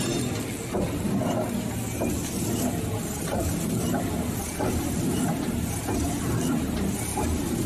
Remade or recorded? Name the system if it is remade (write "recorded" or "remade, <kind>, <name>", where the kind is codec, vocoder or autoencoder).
recorded